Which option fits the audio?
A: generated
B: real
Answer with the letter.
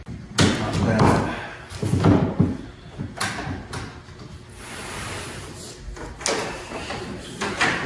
B